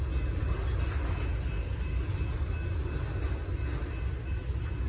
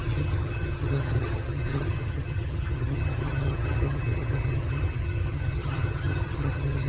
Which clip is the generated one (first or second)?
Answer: second